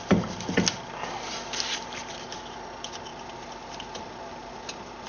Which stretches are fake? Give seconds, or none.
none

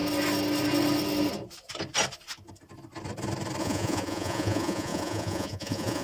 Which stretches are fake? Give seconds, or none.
3.6-6.0 (vocoder, Vocos)

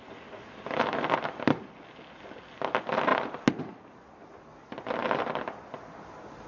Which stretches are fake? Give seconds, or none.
none

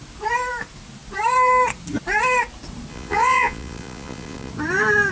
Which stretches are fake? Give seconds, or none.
2.9-4.5 (vocoder, Vocos)

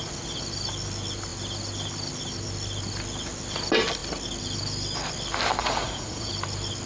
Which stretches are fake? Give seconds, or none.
5.6-6.3 (vocoder, Vocos)

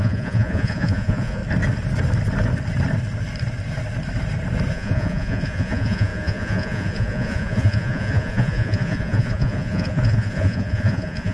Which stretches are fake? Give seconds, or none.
0.0-1.4 (vocoder, Vocos); 4.7-11.3